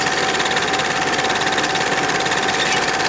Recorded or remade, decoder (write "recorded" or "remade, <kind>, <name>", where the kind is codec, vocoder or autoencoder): recorded